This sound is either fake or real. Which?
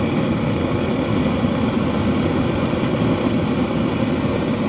real